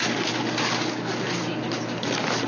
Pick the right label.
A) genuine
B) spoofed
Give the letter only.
A